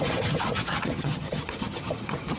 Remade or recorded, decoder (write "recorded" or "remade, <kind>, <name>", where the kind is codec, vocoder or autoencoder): remade, vocoder, HiFi-GAN